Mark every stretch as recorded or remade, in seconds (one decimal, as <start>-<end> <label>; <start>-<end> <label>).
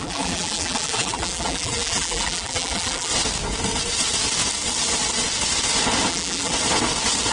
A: 0.0-3.1 remade; 3.1-6.1 recorded; 6.1-6.5 remade; 6.5-7.3 recorded